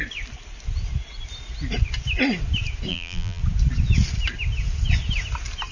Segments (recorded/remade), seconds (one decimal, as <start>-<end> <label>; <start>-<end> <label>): 0.0-2.9 recorded; 2.9-3.4 remade; 3.4-5.7 recorded